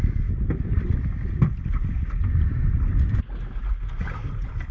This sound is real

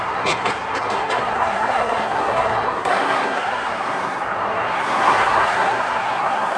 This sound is fake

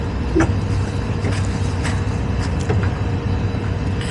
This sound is real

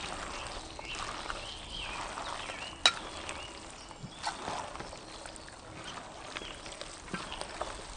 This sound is real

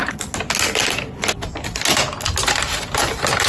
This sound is real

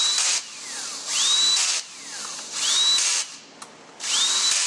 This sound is real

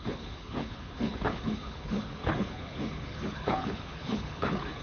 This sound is fake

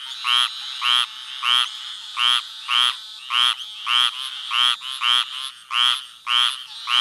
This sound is real